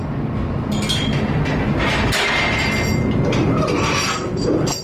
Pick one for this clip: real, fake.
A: real